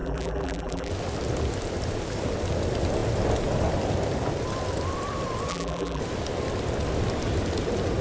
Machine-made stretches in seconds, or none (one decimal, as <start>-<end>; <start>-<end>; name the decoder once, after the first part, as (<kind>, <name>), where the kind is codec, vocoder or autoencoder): 0.0-0.9 (vocoder, BigVGAN v2); 5.5-6.0